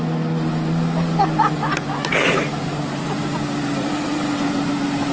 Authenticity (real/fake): real